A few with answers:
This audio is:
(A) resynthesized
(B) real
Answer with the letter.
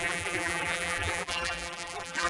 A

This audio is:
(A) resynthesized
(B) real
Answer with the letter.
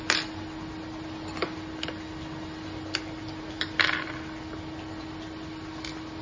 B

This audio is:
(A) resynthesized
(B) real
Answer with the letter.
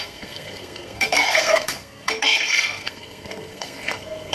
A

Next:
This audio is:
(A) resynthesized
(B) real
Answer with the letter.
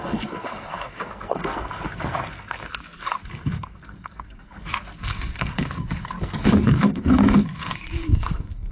A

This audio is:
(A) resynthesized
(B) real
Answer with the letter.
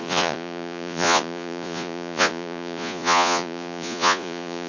A